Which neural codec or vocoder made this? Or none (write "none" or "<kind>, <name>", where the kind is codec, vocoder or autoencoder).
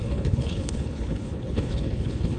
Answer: codec, HILCodec